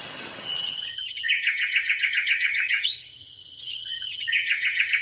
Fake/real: fake